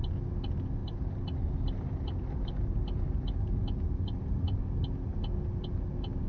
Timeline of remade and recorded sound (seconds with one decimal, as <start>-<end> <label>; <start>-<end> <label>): 0.0-0.8 recorded; 0.8-4.6 remade; 4.6-6.3 recorded